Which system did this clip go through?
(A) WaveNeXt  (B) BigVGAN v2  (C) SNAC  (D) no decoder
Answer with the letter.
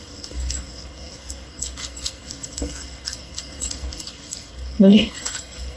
C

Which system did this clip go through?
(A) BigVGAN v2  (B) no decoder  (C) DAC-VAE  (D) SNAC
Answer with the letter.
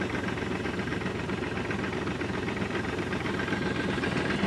B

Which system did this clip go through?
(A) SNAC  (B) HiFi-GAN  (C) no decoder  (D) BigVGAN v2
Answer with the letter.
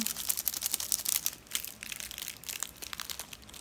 C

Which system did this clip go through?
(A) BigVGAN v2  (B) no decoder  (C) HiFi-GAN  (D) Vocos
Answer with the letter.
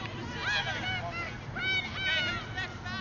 B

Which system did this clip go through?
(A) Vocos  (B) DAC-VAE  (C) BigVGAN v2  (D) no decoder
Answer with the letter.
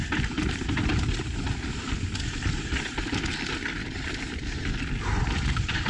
D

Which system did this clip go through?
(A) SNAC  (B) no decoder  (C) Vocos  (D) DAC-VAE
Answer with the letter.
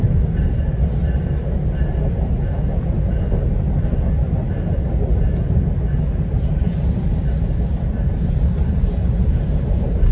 B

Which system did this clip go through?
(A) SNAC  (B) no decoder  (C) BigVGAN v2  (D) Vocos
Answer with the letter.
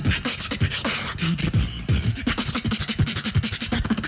B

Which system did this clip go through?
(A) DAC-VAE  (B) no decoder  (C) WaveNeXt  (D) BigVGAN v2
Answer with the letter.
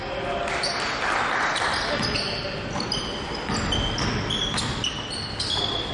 B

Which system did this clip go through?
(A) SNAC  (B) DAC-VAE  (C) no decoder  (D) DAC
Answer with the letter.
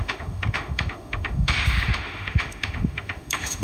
B